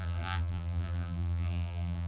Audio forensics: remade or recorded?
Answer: remade